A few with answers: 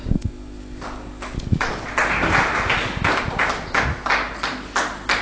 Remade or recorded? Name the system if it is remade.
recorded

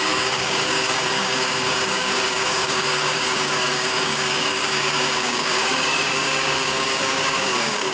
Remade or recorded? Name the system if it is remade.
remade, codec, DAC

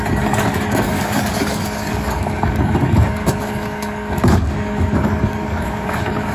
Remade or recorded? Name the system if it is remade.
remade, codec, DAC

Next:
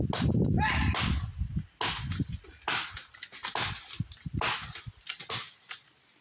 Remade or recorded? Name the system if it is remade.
recorded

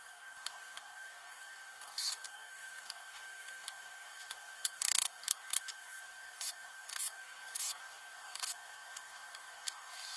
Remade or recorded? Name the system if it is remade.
remade, codec, DAC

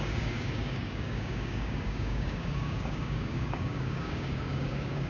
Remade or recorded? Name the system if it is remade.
remade, codec, DAC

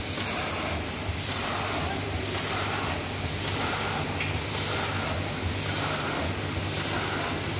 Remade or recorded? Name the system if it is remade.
recorded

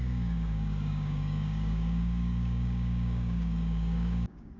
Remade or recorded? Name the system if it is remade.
remade, codec, DAC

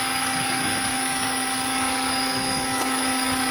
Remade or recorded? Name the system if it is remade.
remade, codec, DAC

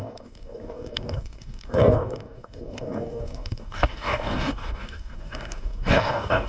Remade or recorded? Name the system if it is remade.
remade, codec, DAC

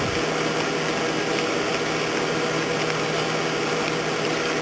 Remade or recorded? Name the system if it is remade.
recorded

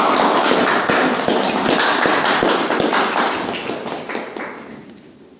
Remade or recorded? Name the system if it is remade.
recorded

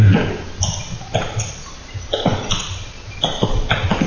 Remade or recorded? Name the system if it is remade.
recorded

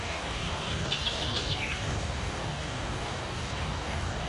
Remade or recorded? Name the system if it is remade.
remade, codec, DAC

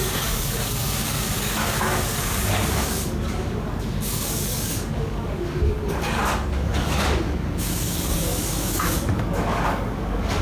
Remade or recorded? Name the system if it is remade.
remade, codec, DAC